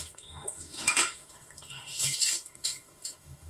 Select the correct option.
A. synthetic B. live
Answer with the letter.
A